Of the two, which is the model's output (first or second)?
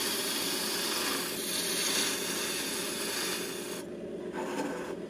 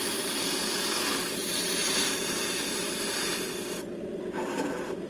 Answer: second